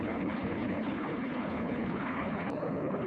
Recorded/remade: remade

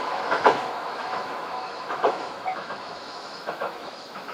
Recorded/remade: remade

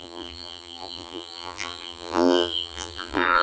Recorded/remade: remade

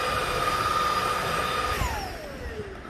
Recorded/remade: recorded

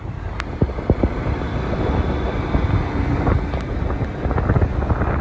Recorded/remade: recorded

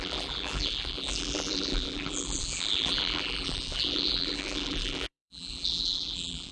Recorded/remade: remade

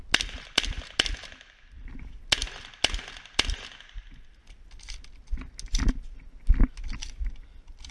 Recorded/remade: recorded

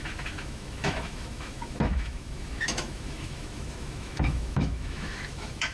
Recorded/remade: remade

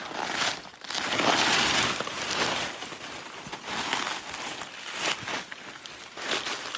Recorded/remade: recorded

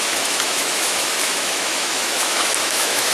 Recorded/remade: remade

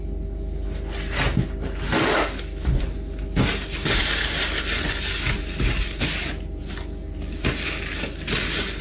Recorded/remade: recorded